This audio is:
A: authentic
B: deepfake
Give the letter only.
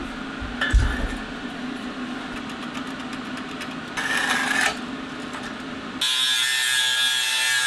A